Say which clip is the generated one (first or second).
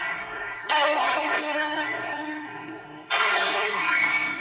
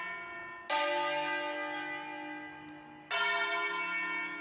first